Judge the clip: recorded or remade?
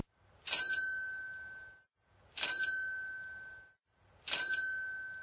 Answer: recorded